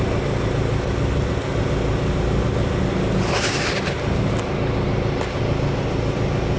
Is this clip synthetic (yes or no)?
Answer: no